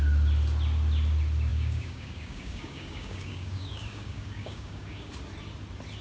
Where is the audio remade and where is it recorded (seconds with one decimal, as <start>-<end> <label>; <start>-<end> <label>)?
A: 0.0-1.5 recorded; 1.5-5.1 remade; 5.1-6.0 recorded